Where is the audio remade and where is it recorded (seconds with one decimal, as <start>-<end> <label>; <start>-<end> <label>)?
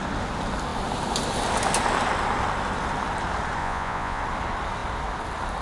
0.0-3.6 recorded; 3.6-4.2 remade; 4.2-5.6 recorded